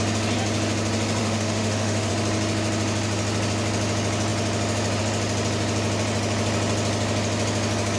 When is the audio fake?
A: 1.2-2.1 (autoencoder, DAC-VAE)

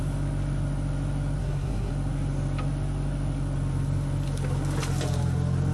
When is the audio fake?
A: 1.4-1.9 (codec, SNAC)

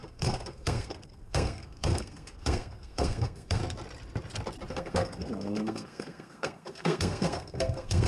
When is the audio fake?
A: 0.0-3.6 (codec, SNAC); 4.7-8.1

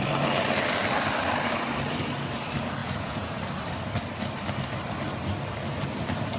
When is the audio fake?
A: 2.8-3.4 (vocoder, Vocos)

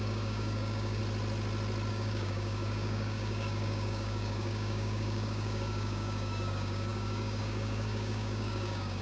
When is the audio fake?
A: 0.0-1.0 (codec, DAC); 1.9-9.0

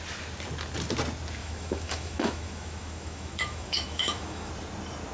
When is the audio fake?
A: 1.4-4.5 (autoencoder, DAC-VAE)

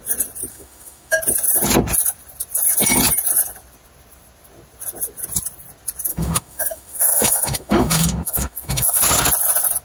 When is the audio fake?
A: 0.5-1.2 (autoencoder, DAC-VAE); 6.1-9.0